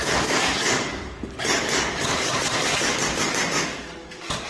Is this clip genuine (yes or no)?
no